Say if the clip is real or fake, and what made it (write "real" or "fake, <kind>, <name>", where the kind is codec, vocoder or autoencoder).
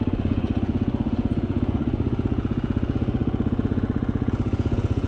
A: fake, vocoder, Vocos